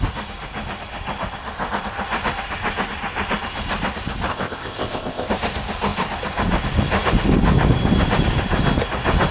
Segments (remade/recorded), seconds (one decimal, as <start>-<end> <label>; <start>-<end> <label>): 0.0-4.3 recorded; 4.3-5.3 remade; 5.3-9.3 recorded